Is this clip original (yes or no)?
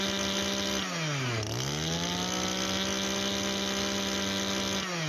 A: yes